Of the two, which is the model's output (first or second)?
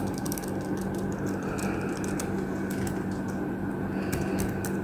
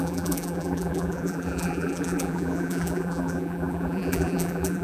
second